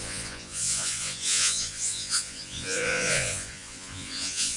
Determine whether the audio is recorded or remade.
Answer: remade